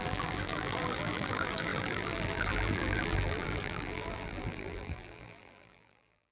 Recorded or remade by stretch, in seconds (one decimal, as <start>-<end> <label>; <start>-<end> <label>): 0.0-6.3 remade